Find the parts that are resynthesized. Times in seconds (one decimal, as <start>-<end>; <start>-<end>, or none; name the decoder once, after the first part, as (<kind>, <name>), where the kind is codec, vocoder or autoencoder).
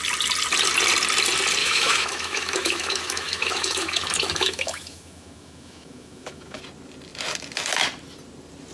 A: 1.6-6.6 (autoencoder, DAC-VAE)